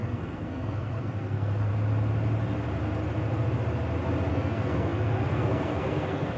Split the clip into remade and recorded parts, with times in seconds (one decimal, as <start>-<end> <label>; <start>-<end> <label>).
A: 0.0-1.7 remade; 1.7-4.3 recorded; 4.3-6.4 remade